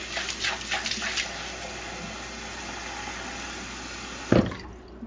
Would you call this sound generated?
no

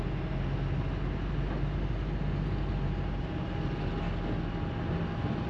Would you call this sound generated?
no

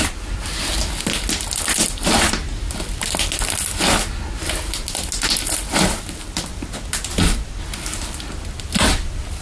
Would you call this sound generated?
no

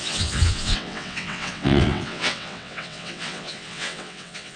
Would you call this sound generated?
yes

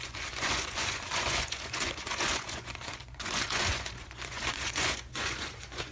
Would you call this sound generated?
yes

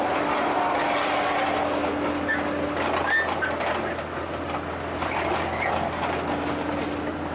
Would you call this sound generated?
no